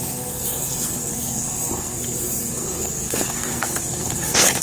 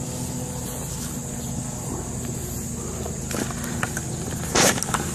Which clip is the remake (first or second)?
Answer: first